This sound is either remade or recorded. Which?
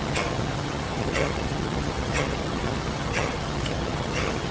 remade